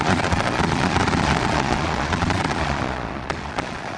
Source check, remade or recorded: remade